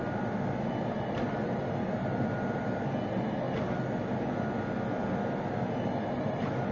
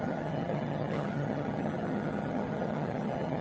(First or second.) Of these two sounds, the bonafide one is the first